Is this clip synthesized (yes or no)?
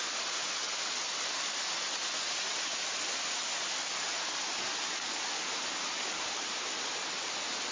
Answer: no